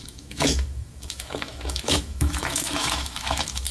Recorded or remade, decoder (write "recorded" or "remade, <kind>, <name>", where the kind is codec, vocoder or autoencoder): remade, autoencoder, DAC-VAE